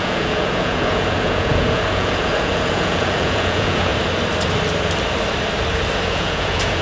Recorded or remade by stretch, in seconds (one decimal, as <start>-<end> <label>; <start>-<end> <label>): 0.0-3.9 remade; 3.9-6.1 recorded; 6.1-6.8 remade